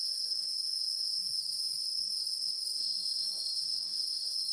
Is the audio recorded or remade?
remade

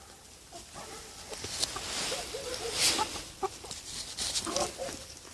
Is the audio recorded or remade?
recorded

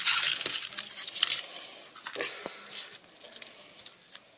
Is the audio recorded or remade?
recorded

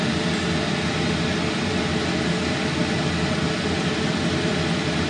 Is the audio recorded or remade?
recorded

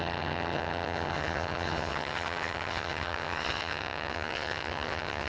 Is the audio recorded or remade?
remade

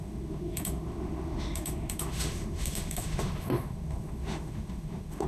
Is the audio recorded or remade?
remade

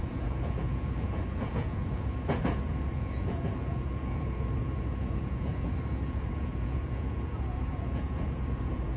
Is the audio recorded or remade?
remade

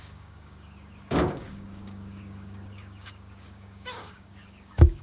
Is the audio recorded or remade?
remade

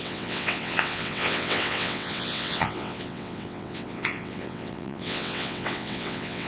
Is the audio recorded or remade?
remade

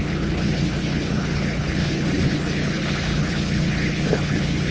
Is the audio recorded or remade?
remade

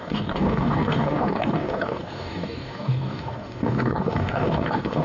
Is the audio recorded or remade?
remade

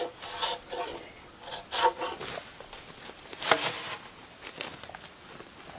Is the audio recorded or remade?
recorded